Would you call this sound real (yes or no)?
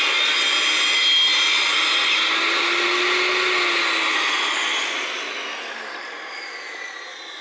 yes